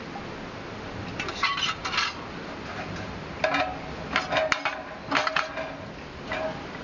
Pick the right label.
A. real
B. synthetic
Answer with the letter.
A